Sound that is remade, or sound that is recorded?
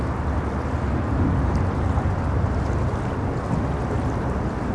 recorded